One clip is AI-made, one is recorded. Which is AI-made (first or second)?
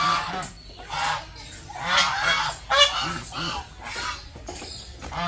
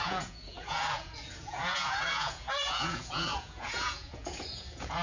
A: second